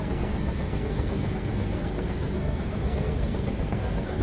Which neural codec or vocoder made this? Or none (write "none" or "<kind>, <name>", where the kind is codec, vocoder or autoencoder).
codec, SNAC